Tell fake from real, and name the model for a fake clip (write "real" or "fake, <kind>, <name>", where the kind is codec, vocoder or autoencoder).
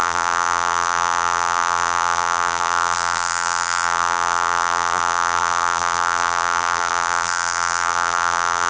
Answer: fake, vocoder, BigVGAN v2